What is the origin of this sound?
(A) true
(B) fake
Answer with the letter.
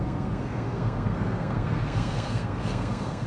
B